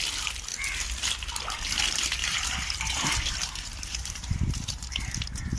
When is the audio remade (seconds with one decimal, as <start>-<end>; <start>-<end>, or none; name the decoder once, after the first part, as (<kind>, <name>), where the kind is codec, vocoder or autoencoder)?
2.2-5.6 (vocoder, BigVGAN v2)